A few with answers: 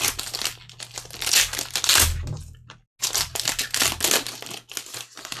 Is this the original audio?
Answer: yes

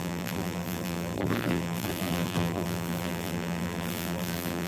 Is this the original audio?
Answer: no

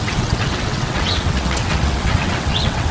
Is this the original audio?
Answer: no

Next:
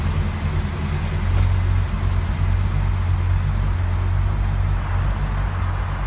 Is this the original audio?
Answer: yes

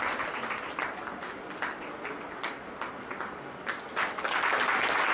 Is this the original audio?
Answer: yes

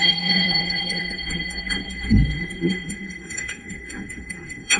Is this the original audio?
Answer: no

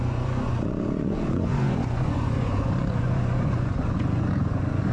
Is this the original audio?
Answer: no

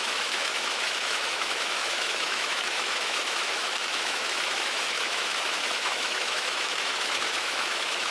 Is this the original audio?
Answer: no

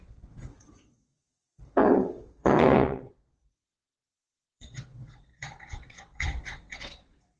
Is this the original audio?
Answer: no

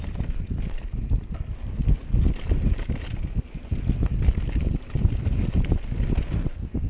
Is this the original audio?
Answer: yes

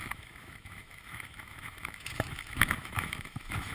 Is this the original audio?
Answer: no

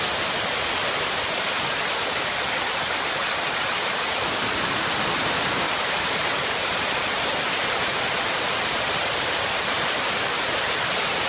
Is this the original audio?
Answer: yes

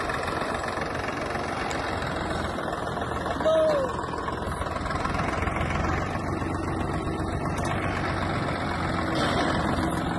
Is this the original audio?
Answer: yes